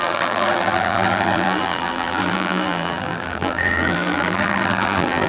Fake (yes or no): yes